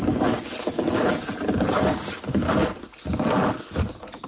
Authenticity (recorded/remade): recorded